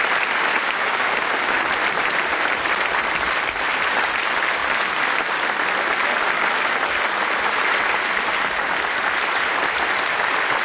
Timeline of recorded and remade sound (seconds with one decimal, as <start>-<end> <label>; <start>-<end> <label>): 0.0-0.5 recorded; 0.5-1.6 remade; 1.6-10.6 recorded